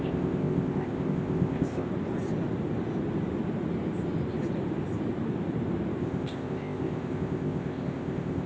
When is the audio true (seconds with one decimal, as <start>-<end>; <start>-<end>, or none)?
1.9-6.0